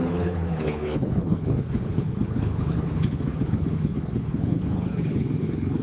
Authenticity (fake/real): fake